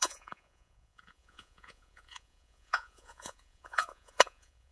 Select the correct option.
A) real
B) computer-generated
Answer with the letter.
B